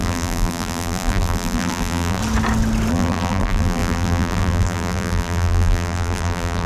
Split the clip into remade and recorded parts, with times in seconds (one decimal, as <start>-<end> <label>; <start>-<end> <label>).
0.0-2.2 remade; 2.2-2.9 recorded; 2.9-6.7 remade